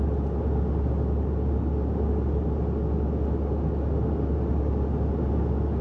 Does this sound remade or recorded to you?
recorded